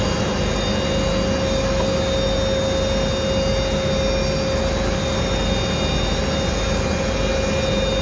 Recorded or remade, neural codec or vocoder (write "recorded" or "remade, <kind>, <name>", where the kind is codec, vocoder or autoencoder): recorded